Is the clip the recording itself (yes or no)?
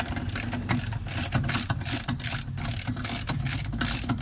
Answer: yes